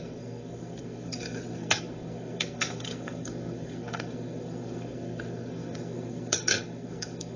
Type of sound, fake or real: fake